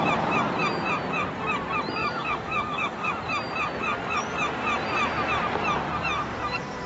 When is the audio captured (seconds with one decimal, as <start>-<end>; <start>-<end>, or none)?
0.0-2.0; 3.1-6.9